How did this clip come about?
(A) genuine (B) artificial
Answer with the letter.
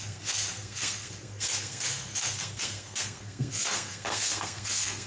B